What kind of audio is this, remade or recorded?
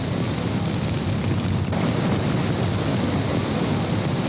recorded